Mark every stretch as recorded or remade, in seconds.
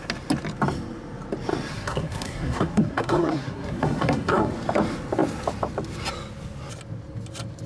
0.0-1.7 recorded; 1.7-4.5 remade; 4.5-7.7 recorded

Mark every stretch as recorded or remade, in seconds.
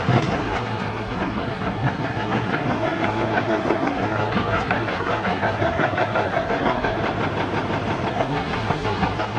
0.0-7.0 remade; 7.0-8.1 recorded; 8.1-9.4 remade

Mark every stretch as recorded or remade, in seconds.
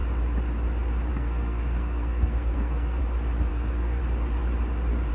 0.0-1.1 recorded; 1.1-3.0 remade; 3.0-3.5 recorded; 3.5-4.0 remade; 4.0-5.1 recorded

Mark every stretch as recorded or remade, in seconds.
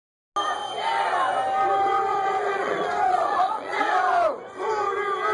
0.0-2.1 recorded; 2.1-4.7 remade; 4.7-5.3 recorded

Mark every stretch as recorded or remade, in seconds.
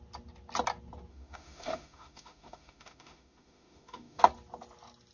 0.0-1.1 recorded; 1.1-4.2 remade; 4.2-5.1 recorded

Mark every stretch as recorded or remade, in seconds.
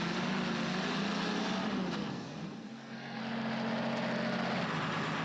0.0-2.0 recorded; 2.0-3.2 remade; 3.2-5.2 recorded